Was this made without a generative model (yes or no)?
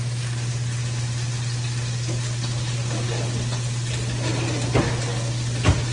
yes